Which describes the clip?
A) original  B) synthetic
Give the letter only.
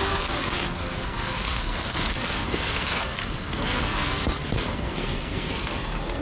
B